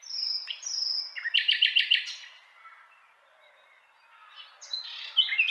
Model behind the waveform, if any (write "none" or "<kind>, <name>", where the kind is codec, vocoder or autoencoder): none